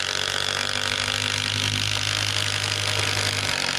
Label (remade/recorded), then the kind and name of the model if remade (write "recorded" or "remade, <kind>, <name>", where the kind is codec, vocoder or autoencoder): recorded